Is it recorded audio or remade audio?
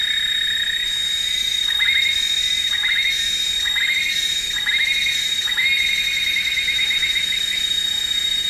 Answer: recorded